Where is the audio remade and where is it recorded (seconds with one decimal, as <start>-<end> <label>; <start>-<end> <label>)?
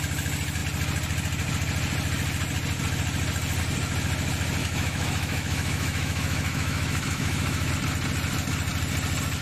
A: 0.0-4.6 recorded; 4.6-7.7 remade; 7.7-9.4 recorded